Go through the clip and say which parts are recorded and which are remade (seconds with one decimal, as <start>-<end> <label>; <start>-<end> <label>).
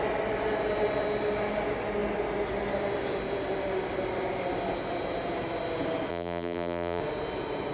0.0-6.1 recorded; 6.1-7.0 remade; 7.0-7.7 recorded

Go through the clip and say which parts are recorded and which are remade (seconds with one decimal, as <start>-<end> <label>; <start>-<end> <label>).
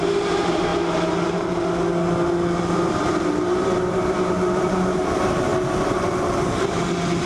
0.0-0.7 remade; 0.7-2.9 recorded; 2.9-5.5 remade; 5.5-7.3 recorded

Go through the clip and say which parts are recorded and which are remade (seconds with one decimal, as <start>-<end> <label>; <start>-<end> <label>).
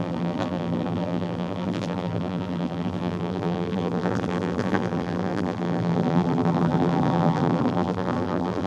0.0-8.7 remade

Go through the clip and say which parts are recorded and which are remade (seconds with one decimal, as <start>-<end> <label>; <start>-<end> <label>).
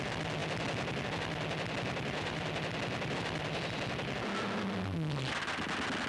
0.0-0.4 recorded; 0.4-3.9 remade; 3.9-6.1 recorded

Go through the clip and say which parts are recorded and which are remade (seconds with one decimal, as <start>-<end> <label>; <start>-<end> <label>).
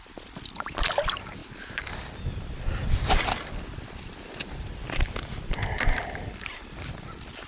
0.0-7.5 remade